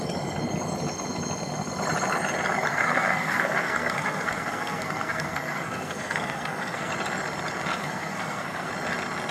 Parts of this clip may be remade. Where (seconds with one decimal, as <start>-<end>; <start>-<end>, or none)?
2.7-6.9; 7.7-8.7